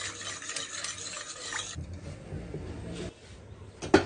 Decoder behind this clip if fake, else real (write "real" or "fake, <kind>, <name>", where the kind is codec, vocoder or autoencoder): real